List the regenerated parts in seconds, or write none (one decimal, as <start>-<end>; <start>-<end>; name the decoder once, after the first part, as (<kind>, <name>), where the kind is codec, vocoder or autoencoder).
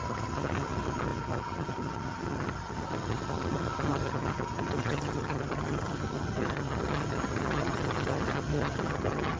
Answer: 0.0-9.4 (vocoder, HiFi-GAN)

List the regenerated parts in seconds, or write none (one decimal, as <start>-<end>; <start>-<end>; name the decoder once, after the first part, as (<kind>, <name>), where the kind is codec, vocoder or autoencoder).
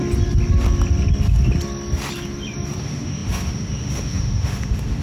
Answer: 2.8-5.0 (autoencoder, DAC-VAE)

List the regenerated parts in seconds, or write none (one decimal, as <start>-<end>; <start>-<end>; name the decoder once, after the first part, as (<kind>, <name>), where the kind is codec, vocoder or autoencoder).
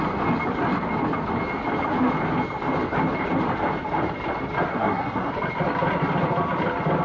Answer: 4.7-5.3 (codec, SNAC)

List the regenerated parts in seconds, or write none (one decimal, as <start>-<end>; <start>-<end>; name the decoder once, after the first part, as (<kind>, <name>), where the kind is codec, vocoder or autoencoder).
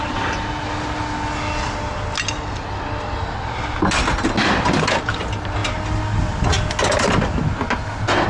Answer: none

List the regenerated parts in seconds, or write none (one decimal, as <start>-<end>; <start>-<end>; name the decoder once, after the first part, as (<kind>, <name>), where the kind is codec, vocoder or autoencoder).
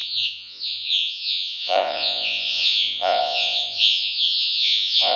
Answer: 0.0-5.2 (vocoder, Vocos)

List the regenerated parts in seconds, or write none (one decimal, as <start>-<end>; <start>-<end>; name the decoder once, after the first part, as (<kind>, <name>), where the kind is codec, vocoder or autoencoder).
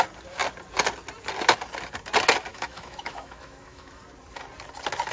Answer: 2.5-4.0 (autoencoder, DAC-VAE)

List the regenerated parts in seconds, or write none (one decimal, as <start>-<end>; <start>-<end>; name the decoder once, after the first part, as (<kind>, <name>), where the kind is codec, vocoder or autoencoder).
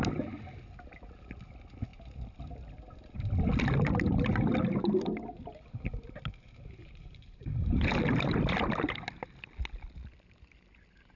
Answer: 6.8-8.3 (vocoder, BigVGAN v2)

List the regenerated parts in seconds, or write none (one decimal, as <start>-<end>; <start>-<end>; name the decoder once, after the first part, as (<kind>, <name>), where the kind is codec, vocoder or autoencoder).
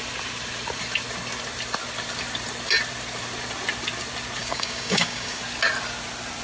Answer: 4.4-5.4 (codec, DAC)